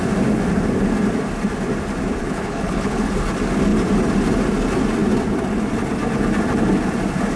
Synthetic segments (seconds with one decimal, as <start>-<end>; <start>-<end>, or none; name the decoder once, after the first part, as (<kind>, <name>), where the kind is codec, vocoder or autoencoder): 2.2-3.1 (codec, HILCodec)